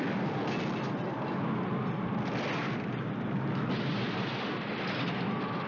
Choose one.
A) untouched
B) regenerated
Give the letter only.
A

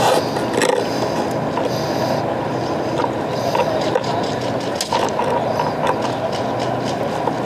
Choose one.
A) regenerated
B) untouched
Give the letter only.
B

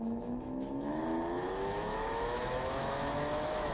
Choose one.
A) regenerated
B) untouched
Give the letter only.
A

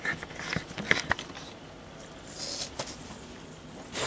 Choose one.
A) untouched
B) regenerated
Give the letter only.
A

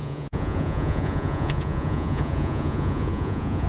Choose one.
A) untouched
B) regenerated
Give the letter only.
B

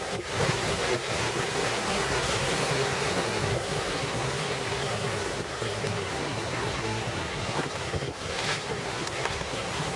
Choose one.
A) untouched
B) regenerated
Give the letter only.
B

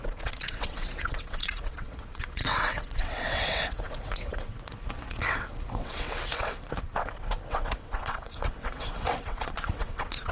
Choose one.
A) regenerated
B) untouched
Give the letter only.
A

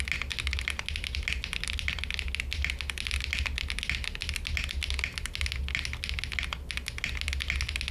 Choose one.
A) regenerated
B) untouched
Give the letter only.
B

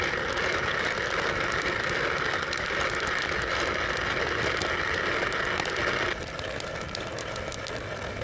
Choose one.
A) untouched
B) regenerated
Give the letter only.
A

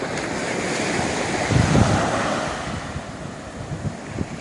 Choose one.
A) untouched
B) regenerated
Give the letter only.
A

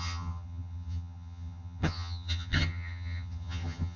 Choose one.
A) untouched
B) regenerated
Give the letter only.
B